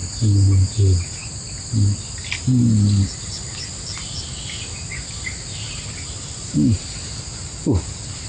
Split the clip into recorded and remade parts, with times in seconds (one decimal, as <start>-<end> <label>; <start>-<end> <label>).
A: 0.0-8.3 recorded